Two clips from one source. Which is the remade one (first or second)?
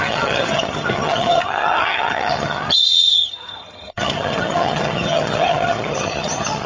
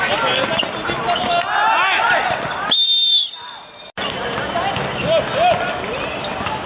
first